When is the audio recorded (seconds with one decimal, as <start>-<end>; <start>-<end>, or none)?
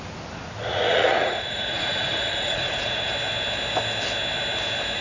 0.0-0.7; 3.1-5.0